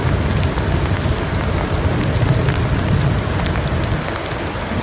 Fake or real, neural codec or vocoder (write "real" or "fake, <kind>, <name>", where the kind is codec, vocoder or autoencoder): real